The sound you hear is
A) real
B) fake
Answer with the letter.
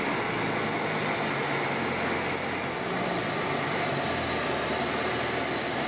A